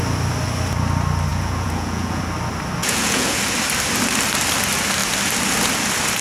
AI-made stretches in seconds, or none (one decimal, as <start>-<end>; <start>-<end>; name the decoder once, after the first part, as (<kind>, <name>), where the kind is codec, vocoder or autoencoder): 1.3-2.2 (vocoder, Vocos); 2.8-3.4